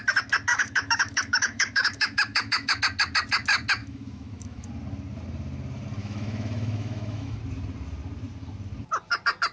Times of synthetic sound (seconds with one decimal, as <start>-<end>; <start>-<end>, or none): 0.5-2.8; 3.8-4.7; 6.0-7.4